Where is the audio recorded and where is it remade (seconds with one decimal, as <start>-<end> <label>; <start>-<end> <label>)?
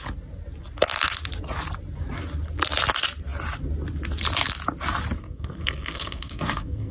0.0-5.2 recorded; 5.2-6.9 remade